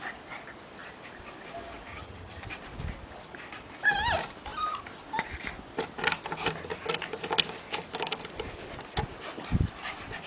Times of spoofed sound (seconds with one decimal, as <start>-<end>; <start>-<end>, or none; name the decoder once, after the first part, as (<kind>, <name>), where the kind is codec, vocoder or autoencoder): 1.9-2.4 (vocoder, HiFi-GAN)